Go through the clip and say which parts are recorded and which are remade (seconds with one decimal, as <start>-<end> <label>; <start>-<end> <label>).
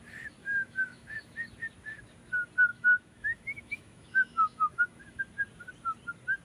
0.0-0.4 recorded; 0.4-1.4 remade; 1.4-2.7 recorded; 2.7-5.2 remade; 5.2-6.4 recorded